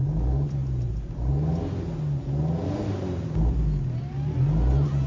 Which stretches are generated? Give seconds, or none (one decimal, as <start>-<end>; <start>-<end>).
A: none